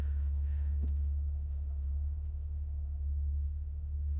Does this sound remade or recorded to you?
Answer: remade